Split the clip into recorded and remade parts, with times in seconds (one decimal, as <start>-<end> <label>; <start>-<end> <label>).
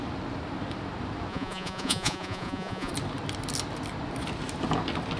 0.0-1.3 recorded; 1.3-2.9 remade; 2.9-5.2 recorded